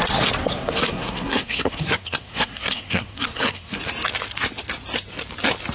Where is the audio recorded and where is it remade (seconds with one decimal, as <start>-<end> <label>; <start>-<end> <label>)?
0.0-0.4 recorded; 0.4-3.8 remade; 3.8-5.7 recorded